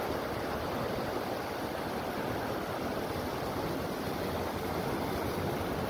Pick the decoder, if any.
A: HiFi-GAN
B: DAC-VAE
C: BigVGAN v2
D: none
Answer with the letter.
D